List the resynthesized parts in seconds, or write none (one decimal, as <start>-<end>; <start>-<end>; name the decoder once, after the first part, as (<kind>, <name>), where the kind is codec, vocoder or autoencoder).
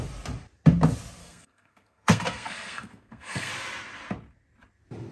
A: 1.2-3.5 (codec, SNAC)